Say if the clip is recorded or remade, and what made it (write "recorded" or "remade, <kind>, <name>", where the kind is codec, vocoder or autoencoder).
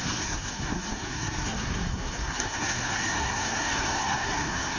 remade, codec, SNAC